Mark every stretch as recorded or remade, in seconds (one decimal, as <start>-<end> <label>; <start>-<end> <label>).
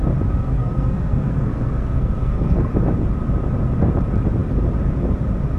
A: 0.0-0.4 recorded; 0.4-2.7 remade; 2.7-5.6 recorded